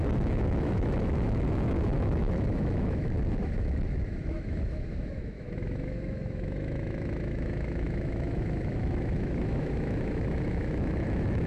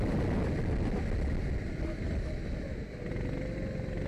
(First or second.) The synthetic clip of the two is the first